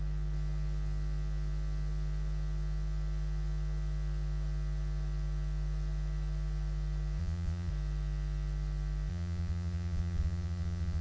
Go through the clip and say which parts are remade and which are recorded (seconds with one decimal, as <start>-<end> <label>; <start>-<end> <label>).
0.0-7.2 recorded; 7.2-7.7 remade; 7.7-9.1 recorded; 9.1-11.0 remade